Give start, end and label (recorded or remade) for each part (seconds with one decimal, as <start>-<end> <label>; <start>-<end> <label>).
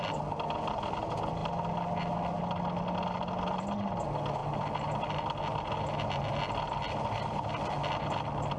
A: 0.0-8.6 recorded